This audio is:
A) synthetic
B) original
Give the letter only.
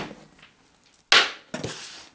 B